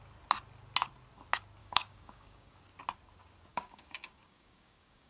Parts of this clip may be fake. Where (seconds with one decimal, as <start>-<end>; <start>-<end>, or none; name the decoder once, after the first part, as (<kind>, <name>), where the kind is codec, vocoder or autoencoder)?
1.6-2.6 (codec, DAC); 3.5-5.1